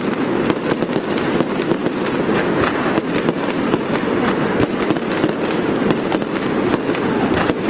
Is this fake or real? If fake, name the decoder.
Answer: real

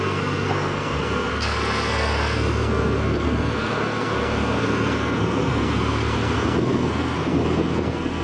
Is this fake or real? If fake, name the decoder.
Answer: fake, codec, SNAC